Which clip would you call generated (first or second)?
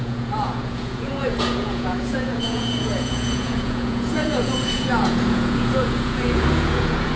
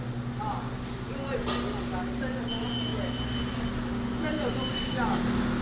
first